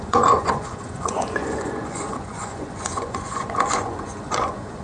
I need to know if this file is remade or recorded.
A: remade